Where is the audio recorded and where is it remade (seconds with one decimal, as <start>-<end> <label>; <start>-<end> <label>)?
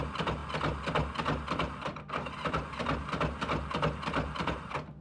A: 0.0-5.0 recorded